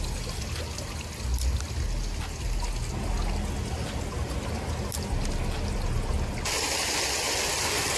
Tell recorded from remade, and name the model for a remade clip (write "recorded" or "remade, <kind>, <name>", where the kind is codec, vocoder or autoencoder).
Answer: recorded